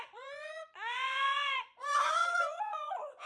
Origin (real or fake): fake